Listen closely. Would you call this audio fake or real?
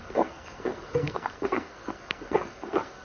fake